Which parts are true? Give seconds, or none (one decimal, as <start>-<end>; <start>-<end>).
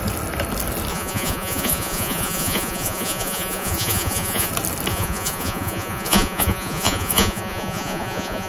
0.0-0.9; 4.5-4.9